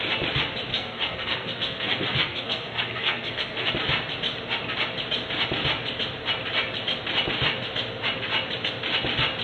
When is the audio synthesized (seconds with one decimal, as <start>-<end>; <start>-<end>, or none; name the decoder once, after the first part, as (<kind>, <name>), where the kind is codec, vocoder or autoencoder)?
0.7-3.7 (codec, SNAC)

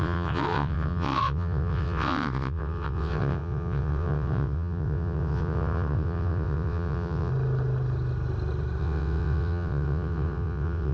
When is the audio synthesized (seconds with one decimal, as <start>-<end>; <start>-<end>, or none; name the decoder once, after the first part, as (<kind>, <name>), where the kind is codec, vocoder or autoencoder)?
0.0-7.3 (vocoder, WaveNeXt); 8.8-10.9

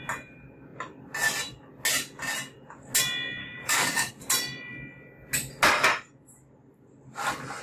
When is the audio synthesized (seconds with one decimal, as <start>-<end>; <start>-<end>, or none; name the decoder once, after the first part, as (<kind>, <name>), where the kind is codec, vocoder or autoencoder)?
3.4-4.1 (codec, DAC)

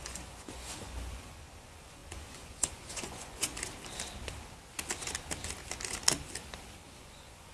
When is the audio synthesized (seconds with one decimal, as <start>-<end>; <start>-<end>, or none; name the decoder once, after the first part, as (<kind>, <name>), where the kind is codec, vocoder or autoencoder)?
0.0-3.5 (vocoder, Vocos); 7.0-7.5

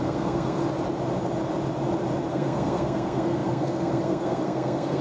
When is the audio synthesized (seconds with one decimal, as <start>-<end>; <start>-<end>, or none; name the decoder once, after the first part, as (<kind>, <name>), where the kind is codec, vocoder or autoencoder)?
0.0-0.6 (codec, SNAC); 2.3-5.0